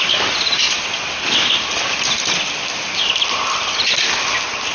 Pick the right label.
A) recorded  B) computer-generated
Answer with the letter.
A